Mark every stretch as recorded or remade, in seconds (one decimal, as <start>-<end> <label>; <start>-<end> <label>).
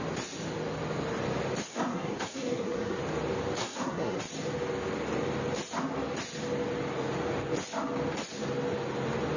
0.0-1.7 recorded; 1.7-3.0 remade; 3.0-3.6 recorded; 3.6-4.2 remade; 4.2-9.4 recorded